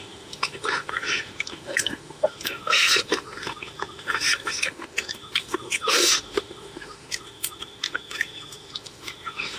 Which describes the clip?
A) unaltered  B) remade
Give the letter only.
B